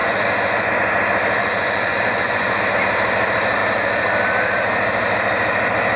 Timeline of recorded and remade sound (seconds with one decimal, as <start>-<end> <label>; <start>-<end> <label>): 0.0-0.7 remade; 0.7-1.4 recorded; 1.4-2.6 remade; 2.6-6.0 recorded

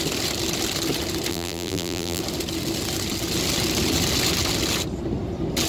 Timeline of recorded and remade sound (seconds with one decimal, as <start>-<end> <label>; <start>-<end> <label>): 0.0-1.3 recorded; 1.3-2.2 remade; 2.2-5.7 recorded

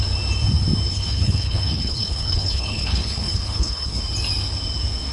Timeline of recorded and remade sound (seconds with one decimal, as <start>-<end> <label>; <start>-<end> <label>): 0.0-0.9 recorded; 0.9-4.0 remade; 4.0-5.1 recorded

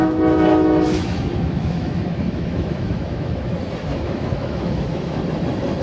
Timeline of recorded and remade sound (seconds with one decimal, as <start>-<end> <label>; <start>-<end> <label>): 0.0-3.5 remade; 3.5-3.9 recorded; 3.9-5.2 remade; 5.2-5.8 recorded

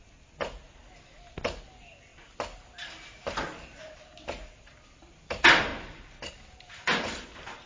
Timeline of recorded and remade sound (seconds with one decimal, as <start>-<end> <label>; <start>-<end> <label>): 0.0-7.7 recorded

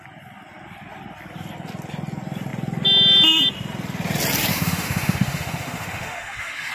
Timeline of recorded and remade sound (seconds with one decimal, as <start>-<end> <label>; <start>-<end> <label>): 0.0-4.5 recorded; 4.5-6.7 remade